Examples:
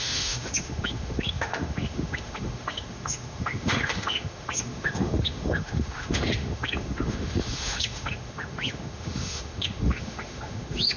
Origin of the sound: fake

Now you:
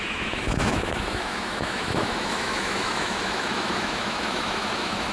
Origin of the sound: fake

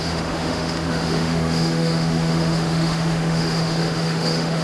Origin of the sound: fake